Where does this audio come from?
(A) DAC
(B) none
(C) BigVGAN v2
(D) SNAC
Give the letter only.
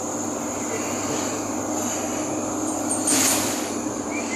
B